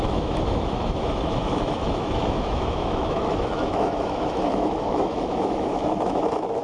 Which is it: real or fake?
fake